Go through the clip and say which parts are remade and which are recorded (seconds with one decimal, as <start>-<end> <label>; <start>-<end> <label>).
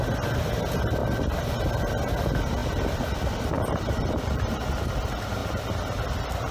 0.0-2.6 recorded; 2.6-4.7 remade; 4.7-6.5 recorded